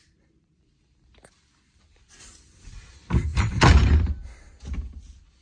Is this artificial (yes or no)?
yes